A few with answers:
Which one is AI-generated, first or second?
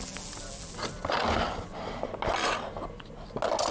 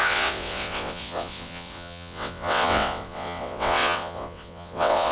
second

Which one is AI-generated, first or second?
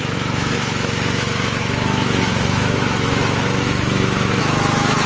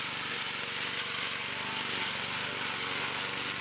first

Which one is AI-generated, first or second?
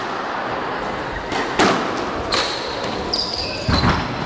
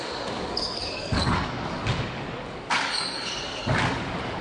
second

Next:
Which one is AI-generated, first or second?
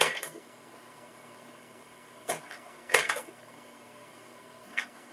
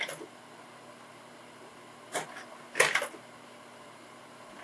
first